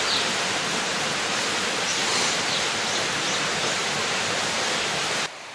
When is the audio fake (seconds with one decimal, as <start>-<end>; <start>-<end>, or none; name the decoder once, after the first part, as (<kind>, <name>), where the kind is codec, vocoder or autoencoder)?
1.9-2.6 (vocoder, BigVGAN v2)